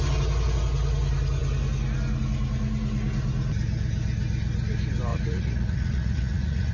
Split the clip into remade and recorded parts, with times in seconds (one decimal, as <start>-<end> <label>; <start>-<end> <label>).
0.0-5.1 recorded; 5.1-6.7 remade